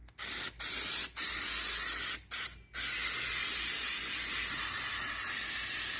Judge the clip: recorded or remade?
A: recorded